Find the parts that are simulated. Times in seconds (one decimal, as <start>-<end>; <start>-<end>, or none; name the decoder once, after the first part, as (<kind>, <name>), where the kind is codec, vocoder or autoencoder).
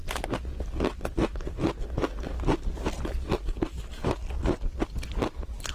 none